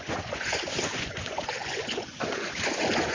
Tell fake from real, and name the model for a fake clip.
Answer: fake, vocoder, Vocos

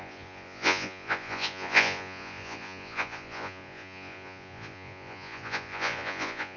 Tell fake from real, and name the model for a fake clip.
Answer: fake, vocoder, Vocos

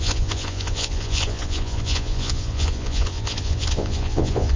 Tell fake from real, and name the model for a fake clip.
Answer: fake, vocoder, Vocos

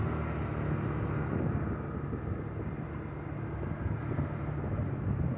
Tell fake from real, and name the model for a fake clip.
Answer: real